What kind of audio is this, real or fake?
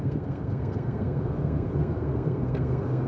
fake